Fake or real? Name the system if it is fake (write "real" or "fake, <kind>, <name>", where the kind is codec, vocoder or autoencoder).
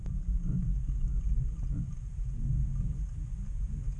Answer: real